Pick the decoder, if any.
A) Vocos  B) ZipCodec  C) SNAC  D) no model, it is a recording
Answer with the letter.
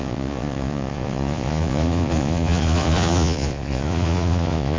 A